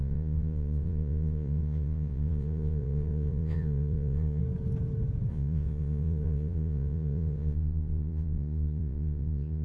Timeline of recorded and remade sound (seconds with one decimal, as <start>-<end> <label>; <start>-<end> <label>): 0.0-4.4 remade; 4.4-5.3 recorded; 5.3-9.6 remade